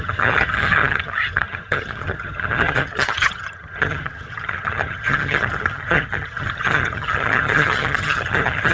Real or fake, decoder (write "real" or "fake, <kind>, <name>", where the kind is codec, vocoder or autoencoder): fake, vocoder, HiFi-GAN